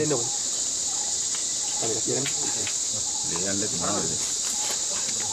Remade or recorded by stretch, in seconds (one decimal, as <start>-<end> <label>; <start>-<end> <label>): 0.0-5.3 recorded